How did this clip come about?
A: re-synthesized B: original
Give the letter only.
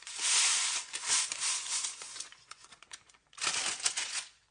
A